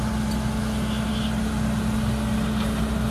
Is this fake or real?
real